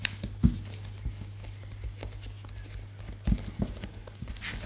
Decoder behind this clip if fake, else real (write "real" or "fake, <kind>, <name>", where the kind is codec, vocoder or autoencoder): real